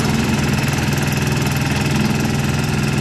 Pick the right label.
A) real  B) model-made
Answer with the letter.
A